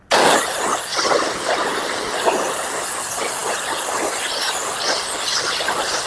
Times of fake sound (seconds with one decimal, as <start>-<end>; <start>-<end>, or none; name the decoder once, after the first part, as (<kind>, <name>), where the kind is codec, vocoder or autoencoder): none

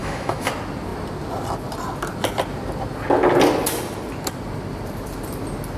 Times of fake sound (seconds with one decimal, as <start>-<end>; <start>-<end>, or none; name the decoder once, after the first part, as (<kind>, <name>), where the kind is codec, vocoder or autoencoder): 0.0-0.5 (autoencoder, DAC-VAE)

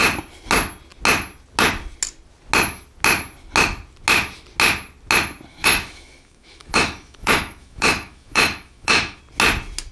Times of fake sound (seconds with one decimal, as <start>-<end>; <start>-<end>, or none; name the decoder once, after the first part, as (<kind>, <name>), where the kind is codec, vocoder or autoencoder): 5.5-9.2 (autoencoder, DAC-VAE)